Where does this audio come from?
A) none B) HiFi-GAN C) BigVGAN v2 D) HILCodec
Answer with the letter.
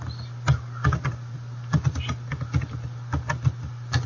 A